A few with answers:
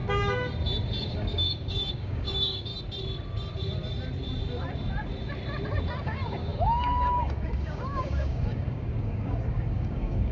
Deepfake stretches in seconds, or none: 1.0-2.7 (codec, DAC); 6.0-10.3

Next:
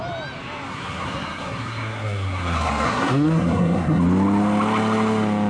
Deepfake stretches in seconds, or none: 0.7-4.0 (codec, SNAC)

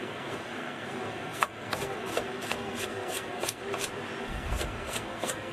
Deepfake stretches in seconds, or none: 0.0-3.6 (codec, SNAC); 4.2-5.5

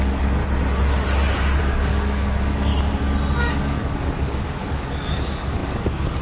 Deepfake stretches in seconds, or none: 0.0-0.4 (codec, DAC); 1.6-2.7; 3.4-6.2

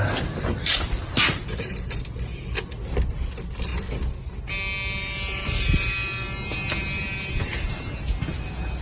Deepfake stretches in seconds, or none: none